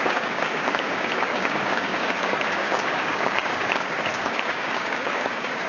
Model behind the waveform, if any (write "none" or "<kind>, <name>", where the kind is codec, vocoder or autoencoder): codec, DAC